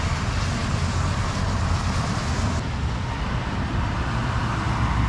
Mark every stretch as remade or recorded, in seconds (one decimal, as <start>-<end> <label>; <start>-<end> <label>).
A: 0.0-5.1 recorded